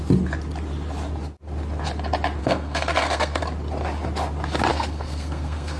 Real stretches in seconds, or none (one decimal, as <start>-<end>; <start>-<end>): 0.0-2.4; 3.4-4.7